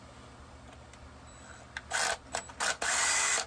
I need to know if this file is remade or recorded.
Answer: recorded